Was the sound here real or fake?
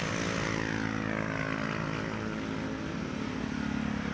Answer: real